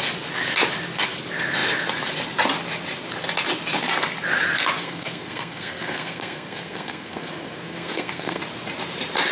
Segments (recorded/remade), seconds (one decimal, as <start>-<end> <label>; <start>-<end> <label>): 0.0-4.8 recorded; 4.8-8.4 remade; 8.4-9.3 recorded

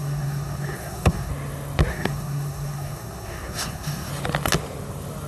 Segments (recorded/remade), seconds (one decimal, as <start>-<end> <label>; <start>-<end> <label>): 0.0-1.3 remade; 1.3-1.9 recorded; 1.9-4.1 remade; 4.1-5.3 recorded